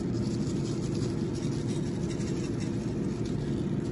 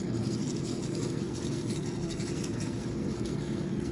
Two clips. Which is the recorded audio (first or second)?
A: first